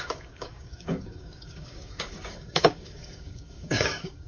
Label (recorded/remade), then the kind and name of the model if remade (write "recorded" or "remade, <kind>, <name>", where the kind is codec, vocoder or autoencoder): remade, codec, DAC